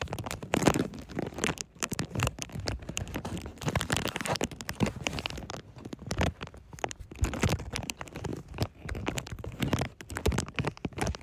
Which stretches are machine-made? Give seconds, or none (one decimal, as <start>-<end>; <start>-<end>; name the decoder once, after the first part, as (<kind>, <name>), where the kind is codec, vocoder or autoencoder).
0.0-11.2 (vocoder, BigVGAN v2)